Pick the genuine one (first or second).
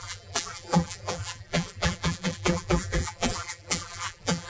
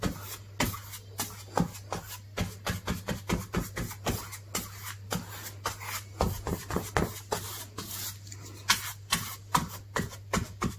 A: second